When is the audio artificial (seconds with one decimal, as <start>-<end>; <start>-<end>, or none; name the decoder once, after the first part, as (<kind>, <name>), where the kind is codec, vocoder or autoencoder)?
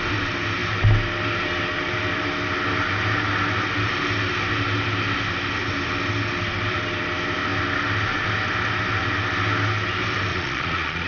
10.3-11.1 (vocoder, Vocos)